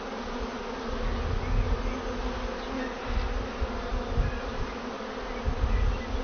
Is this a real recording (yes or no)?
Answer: yes